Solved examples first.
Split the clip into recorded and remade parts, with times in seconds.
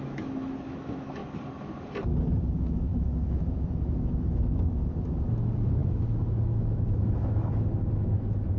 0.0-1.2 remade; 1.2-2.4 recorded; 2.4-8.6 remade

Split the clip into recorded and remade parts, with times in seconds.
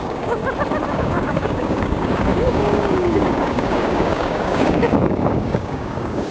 0.0-0.4 remade; 0.4-0.9 recorded; 0.9-6.3 remade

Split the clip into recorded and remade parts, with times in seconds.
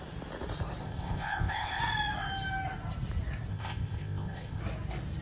0.0-0.8 recorded; 0.8-1.8 remade; 1.8-3.5 recorded; 3.5-4.6 remade; 4.6-5.2 recorded